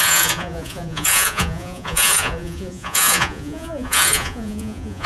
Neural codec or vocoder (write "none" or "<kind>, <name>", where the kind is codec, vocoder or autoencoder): vocoder, Vocos